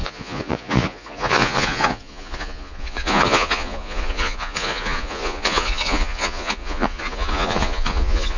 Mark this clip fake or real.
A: fake